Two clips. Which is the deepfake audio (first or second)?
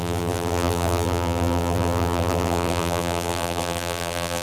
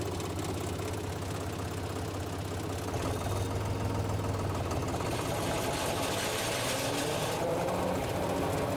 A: first